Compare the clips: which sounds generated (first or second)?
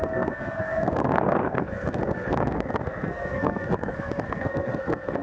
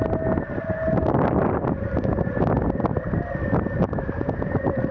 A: first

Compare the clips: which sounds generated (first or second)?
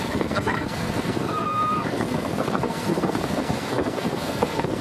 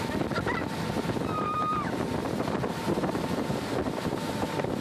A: first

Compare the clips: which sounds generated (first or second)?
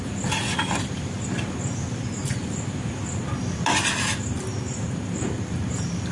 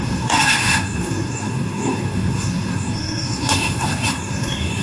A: second